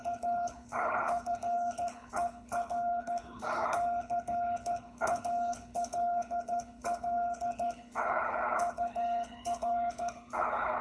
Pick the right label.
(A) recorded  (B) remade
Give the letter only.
B